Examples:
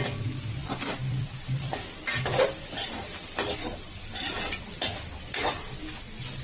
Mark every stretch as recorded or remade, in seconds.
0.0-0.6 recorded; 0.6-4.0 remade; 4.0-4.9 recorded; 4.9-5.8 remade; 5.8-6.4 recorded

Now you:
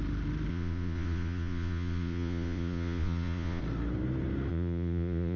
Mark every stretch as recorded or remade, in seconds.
0.0-0.5 recorded; 0.5-3.6 remade; 3.6-4.5 recorded; 4.5-5.4 remade

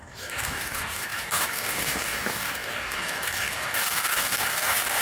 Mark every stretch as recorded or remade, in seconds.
0.0-5.0 remade

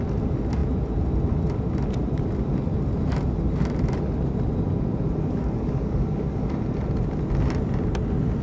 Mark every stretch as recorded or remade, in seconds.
0.0-5.3 recorded; 5.3-6.5 remade; 6.5-8.4 recorded

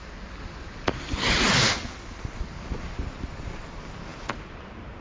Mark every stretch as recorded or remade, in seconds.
0.0-5.0 recorded

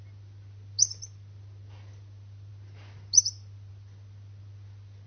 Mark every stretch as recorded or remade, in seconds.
0.0-5.1 recorded